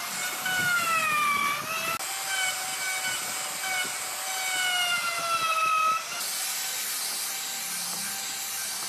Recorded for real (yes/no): yes